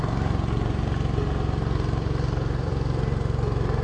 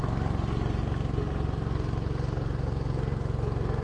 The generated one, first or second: first